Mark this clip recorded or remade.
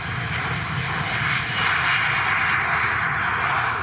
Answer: recorded